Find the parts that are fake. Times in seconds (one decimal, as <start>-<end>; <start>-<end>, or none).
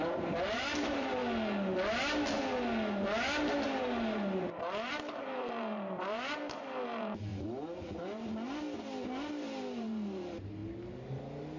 0.0-1.2; 3.8-7.3; 9.0-10.6